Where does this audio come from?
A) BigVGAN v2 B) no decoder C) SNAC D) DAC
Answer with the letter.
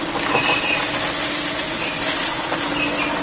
B